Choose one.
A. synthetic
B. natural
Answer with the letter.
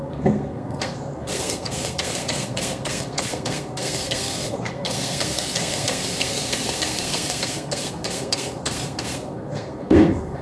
A